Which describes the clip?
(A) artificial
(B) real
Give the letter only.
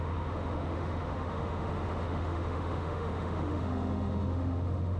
A